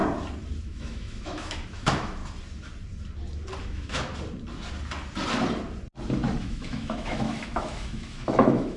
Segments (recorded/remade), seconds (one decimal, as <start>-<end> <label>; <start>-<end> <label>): 0.0-0.6 recorded; 0.6-2.2 remade; 2.2-3.6 recorded; 3.6-4.1 remade; 4.1-6.4 recorded; 6.4-8.8 remade